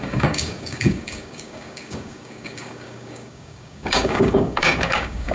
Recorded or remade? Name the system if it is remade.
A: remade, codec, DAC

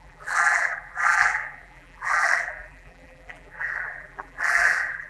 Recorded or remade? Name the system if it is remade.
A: remade, vocoder, BigVGAN v2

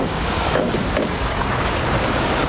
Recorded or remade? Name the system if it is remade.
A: remade, codec, DAC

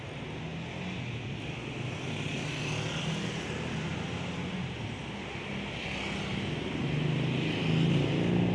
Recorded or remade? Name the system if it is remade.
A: recorded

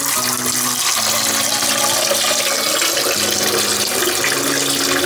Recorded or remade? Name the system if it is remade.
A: recorded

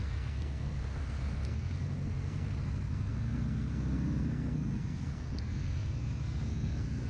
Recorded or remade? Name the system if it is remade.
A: remade, codec, SNAC